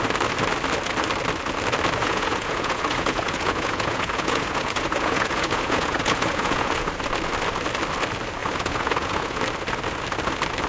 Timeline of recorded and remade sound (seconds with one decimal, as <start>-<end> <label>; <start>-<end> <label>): 0.0-2.0 recorded; 2.0-6.9 remade; 6.9-8.4 recorded; 8.4-9.4 remade; 9.4-10.7 recorded